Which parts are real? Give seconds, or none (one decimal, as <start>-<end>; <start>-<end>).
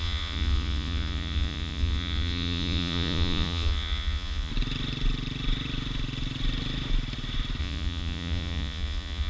4.5-7.6